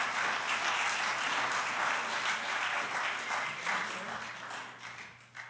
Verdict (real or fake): real